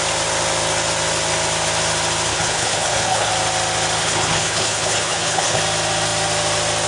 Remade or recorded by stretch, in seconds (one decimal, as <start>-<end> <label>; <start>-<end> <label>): 0.0-2.3 recorded; 2.3-3.3 remade; 3.3-4.0 recorded; 4.0-5.6 remade; 5.6-6.9 recorded